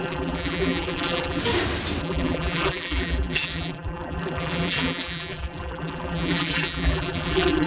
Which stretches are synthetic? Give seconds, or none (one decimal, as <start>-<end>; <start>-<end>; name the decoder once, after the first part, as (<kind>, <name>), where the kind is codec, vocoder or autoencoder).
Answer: 0.0-1.4 (vocoder, BigVGAN v2); 2.0-7.7